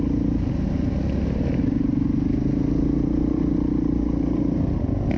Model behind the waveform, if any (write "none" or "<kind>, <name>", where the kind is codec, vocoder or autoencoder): none